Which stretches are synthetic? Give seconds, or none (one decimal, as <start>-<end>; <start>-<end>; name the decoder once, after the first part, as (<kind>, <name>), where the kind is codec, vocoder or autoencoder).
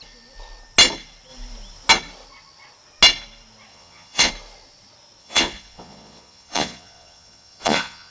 3.7-4.3 (vocoder, Vocos); 5.2-8.1